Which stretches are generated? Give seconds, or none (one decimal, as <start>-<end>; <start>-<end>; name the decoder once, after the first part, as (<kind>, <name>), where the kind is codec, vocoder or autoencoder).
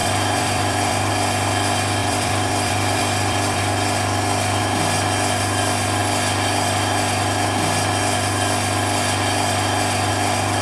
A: 0.0-1.1 (vocoder, BigVGAN v2); 2.0-3.6